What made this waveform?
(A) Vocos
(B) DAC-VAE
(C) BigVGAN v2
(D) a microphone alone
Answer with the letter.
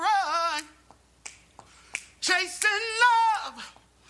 D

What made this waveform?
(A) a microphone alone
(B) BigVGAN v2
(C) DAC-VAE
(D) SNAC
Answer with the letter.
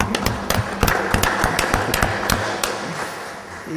A